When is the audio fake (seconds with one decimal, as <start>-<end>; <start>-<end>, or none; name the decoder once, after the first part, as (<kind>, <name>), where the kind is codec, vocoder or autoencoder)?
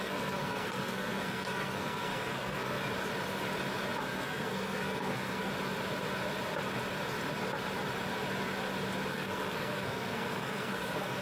0.0-2.8 (codec, SNAC); 4.0-5.5; 9.1-11.2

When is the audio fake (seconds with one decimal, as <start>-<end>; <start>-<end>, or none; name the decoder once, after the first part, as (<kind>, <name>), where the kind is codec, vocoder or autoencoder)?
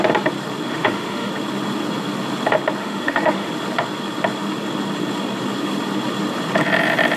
0.7-1.3 (autoencoder, DAC-VAE); 2.8-3.5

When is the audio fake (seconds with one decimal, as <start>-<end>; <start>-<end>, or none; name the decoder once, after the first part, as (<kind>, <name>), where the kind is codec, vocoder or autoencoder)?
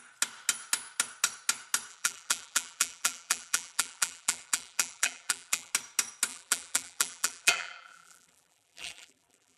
1.9-5.7 (vocoder, BigVGAN v2); 6.3-9.6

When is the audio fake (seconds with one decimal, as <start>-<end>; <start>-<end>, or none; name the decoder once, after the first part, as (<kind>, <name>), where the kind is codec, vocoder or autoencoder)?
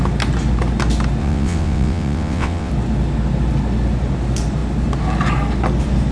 1.2-2.7 (vocoder, WaveNeXt)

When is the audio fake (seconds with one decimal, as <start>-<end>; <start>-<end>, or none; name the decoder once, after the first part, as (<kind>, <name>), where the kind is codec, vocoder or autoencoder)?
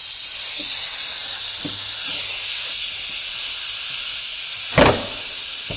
none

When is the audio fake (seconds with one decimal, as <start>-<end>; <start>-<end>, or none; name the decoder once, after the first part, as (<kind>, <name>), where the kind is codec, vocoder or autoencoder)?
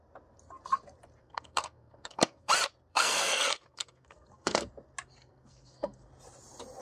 1.2-2.5 (codec, SNAC); 2.9-4.7; 5.2-6.1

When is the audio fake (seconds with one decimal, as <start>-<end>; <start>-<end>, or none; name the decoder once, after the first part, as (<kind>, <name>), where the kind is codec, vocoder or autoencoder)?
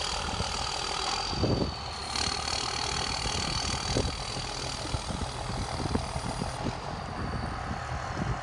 none